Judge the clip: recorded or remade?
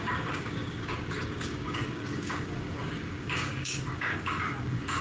remade